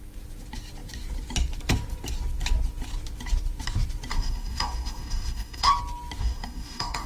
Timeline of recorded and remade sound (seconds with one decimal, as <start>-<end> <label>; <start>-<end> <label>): 0.0-4.1 recorded; 4.1-5.7 remade; 5.7-6.2 recorded; 6.2-7.1 remade